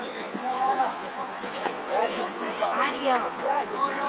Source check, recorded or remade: remade